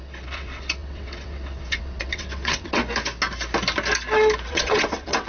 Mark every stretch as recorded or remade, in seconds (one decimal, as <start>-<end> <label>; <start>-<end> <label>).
0.0-2.8 remade; 2.8-4.5 recorded; 4.5-5.3 remade

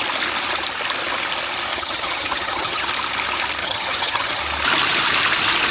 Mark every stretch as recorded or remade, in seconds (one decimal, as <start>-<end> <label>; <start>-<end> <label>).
0.0-1.7 recorded; 1.7-2.9 remade; 2.9-3.6 recorded; 3.6-4.4 remade; 4.4-5.7 recorded